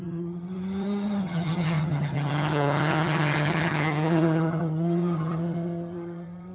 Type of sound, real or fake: fake